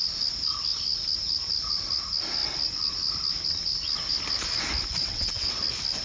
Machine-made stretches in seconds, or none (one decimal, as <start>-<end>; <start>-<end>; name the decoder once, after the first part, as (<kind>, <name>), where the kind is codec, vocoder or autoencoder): 5.0-5.5 (vocoder, WaveNeXt)